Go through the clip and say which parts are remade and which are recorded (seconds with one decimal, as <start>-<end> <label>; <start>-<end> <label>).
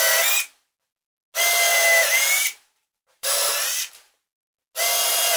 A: 0.0-1.7 recorded; 1.7-3.5 remade; 3.5-5.4 recorded